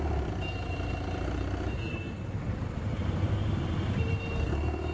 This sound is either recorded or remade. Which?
recorded